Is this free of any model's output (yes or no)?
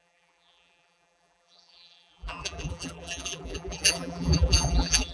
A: no